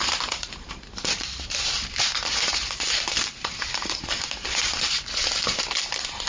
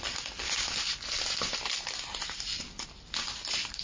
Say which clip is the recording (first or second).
second